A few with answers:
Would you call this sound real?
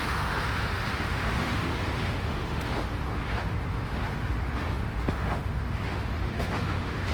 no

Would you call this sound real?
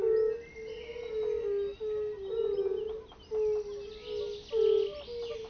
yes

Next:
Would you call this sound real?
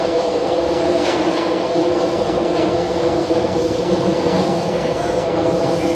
no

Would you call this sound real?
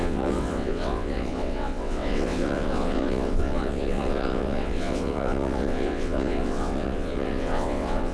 no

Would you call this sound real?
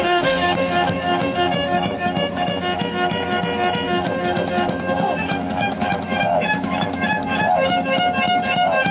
no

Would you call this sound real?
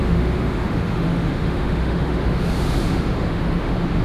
no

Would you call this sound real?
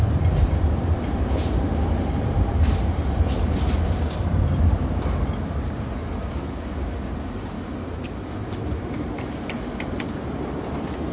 no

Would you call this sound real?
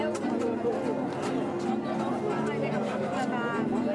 yes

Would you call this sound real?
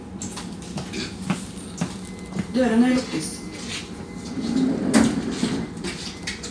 yes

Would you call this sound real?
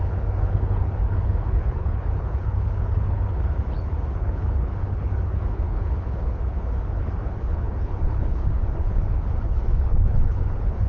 no